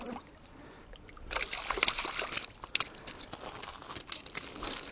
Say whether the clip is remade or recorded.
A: recorded